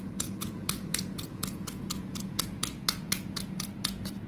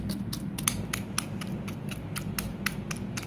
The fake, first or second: first